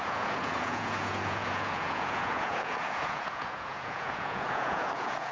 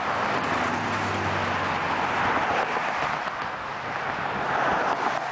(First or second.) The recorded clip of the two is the second